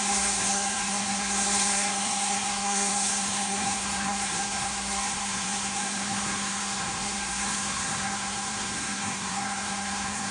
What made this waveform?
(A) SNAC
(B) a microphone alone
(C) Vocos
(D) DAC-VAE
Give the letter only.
A